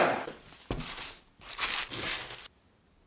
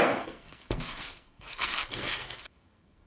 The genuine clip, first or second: first